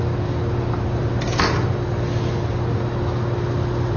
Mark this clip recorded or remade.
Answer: recorded